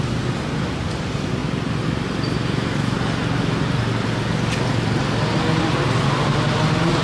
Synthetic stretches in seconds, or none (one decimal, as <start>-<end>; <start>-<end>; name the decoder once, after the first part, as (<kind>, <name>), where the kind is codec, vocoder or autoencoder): none